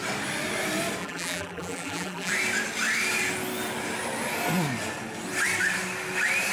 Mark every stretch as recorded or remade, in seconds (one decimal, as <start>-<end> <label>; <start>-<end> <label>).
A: 0.0-1.0 recorded; 1.0-2.3 remade; 2.3-6.5 recorded